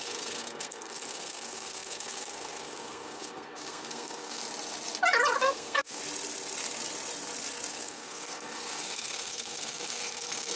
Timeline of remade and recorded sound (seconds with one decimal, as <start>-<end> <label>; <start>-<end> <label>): 0.0-4.4 remade; 4.4-5.4 recorded; 5.4-6.0 remade; 6.0-7.7 recorded; 7.7-10.6 remade